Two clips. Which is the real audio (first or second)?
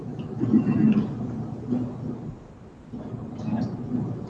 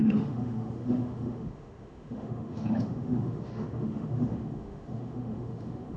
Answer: first